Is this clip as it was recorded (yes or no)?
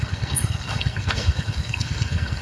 no